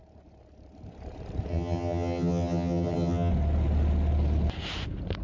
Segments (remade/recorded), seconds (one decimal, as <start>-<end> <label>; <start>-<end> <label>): 0.0-1.5 recorded; 1.5-3.3 remade; 3.3-5.2 recorded